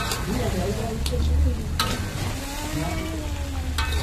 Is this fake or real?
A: real